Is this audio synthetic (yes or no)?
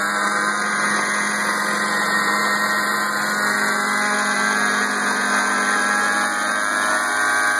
no